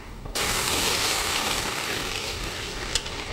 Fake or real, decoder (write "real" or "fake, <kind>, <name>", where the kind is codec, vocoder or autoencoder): fake, codec, DAC